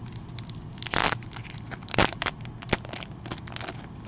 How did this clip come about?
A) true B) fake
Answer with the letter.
A